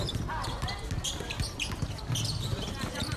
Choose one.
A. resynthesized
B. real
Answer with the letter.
B